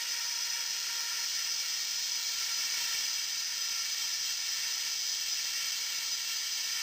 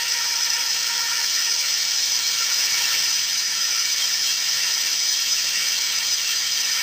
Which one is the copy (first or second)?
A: second